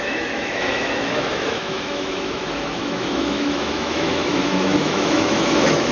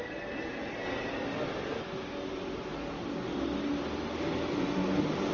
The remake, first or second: first